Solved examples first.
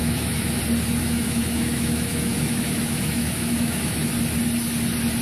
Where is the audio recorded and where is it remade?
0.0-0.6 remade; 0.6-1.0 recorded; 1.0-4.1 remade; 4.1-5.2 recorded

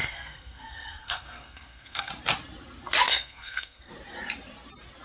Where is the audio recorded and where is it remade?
0.0-2.1 remade; 2.1-3.1 recorded; 3.1-3.9 remade; 3.9-5.0 recorded

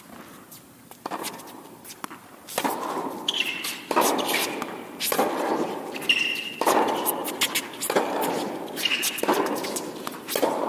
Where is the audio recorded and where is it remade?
0.0-10.7 recorded

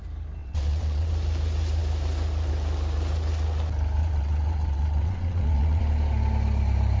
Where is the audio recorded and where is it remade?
0.0-0.4 recorded; 0.4-1.1 remade; 1.1-4.0 recorded; 4.0-5.8 remade; 5.8-7.0 recorded